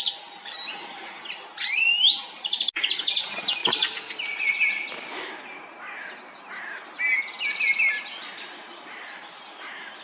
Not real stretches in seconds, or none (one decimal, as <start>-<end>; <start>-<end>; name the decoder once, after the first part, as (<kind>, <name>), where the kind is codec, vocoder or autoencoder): none

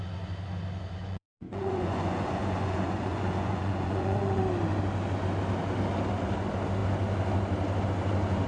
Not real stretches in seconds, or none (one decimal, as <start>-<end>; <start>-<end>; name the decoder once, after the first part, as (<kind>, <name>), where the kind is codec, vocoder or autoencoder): 1.0-4.4 (vocoder, Vocos)

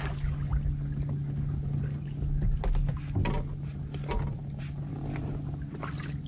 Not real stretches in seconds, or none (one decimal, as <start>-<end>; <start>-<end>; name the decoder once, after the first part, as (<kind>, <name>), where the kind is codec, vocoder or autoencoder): none

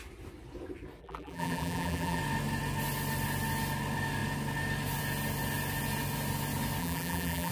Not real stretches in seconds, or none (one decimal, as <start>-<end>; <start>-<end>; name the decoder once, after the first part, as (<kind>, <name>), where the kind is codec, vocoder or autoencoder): 1.0-2.2 (vocoder, BigVGAN v2); 6.8-7.5

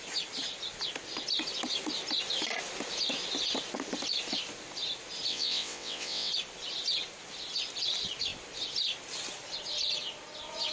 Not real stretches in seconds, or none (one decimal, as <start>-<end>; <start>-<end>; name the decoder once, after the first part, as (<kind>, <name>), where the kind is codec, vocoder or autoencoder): 5.3-6.3 (vocoder, WaveNeXt)

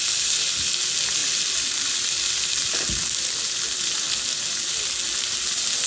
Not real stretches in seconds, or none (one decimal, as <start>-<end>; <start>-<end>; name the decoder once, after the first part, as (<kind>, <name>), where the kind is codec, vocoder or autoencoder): none

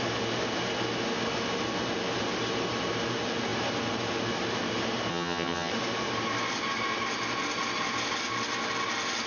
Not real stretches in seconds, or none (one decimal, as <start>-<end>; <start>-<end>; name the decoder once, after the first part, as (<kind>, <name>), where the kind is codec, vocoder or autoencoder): 5.1-5.7 (vocoder, HiFi-GAN)

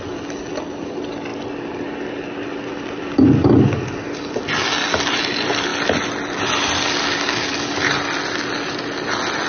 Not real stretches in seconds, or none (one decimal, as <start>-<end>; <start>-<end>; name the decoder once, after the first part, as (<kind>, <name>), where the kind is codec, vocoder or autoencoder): none